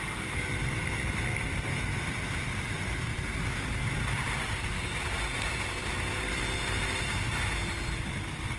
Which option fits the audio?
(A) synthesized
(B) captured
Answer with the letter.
B